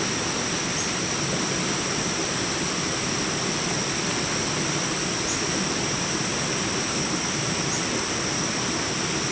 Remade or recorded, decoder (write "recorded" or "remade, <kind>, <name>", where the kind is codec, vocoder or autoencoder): recorded